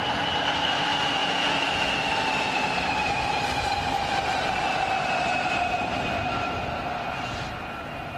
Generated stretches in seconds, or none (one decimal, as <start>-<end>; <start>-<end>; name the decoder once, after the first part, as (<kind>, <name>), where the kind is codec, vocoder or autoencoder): 1.2-1.9 (vocoder, Vocos)